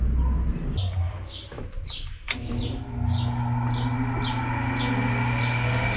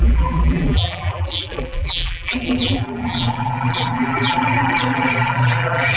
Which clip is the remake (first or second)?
second